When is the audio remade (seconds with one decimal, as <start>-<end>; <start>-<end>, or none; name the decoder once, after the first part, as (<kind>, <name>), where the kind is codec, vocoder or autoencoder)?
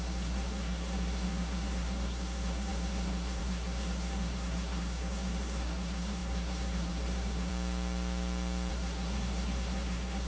0.0-7.5 (codec, SNAC); 8.7-10.3